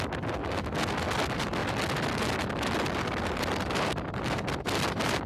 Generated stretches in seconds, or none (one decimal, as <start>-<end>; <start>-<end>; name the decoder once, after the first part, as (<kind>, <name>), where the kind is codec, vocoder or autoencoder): none